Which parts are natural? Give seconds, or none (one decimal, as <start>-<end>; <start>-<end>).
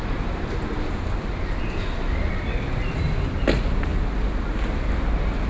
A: 0.0-5.5